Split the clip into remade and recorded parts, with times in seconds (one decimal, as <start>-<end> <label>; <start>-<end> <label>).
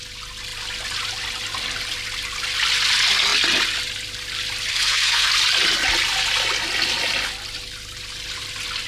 0.0-4.7 recorded; 4.7-5.3 remade; 5.3-8.9 recorded